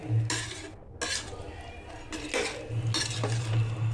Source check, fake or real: real